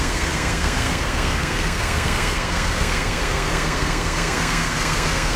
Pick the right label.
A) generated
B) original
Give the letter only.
A